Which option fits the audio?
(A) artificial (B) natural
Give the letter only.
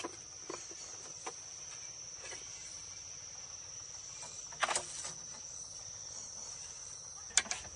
B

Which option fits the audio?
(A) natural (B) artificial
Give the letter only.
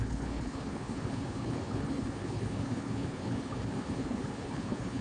B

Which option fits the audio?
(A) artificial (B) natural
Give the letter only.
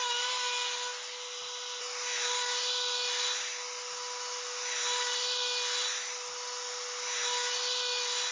B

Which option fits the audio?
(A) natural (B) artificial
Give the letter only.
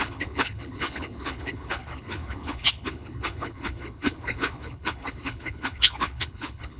B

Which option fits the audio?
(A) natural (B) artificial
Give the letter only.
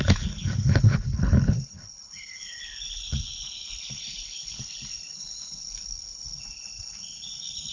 B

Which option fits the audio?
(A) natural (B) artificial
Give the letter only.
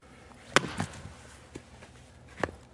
A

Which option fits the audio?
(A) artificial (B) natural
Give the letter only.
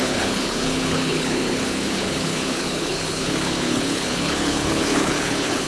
A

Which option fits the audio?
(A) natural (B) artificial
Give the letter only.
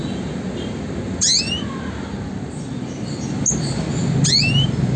A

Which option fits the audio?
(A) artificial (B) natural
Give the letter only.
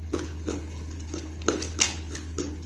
A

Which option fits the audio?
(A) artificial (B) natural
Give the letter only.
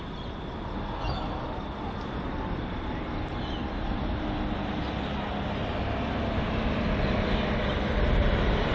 B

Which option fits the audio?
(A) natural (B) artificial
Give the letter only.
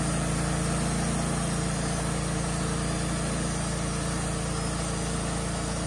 A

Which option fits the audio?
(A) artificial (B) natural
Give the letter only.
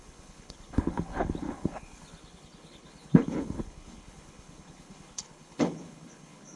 A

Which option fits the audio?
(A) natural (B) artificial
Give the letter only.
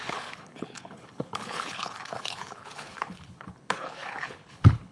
B